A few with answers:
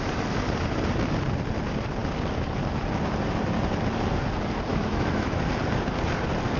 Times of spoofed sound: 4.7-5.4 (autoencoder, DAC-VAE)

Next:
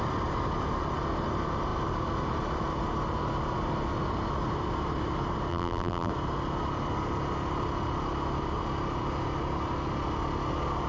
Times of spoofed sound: 5.5-6.1 (vocoder, BigVGAN v2)

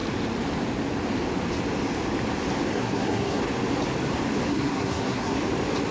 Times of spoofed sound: 2.7-3.4 (codec, SNAC); 4.5-5.4

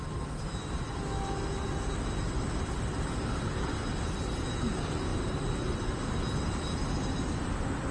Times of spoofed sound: none

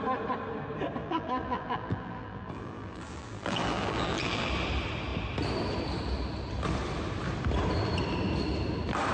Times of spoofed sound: 1.0-4.5 (vocoder, BigVGAN v2)

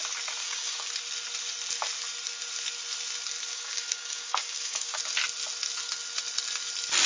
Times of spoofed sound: 0.4-0.9 (codec, DAC); 3.5-5.0

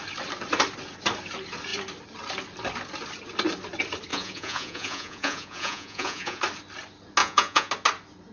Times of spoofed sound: 4.1-6.4 (vocoder, Vocos); 7.2-7.7